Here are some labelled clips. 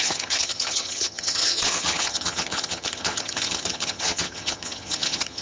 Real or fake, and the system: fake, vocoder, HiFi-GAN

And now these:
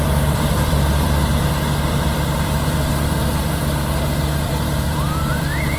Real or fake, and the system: fake, vocoder, BigVGAN v2